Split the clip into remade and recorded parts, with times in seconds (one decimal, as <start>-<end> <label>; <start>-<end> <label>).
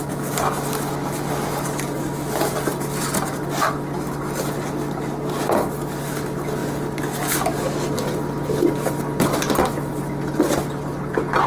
0.0-11.5 recorded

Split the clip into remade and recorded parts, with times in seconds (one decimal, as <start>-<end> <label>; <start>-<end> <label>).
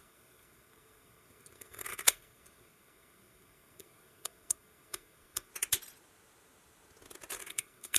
0.0-5.5 remade; 5.5-7.5 recorded; 7.5-8.0 remade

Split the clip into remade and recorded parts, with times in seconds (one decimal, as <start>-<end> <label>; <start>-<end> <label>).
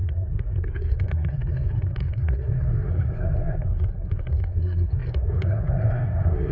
0.0-6.5 remade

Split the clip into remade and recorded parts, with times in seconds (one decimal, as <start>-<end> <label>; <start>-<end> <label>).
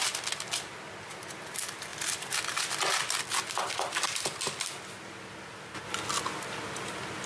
0.0-7.3 recorded